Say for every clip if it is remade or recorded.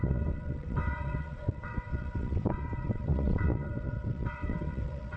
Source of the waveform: remade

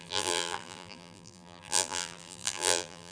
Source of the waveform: remade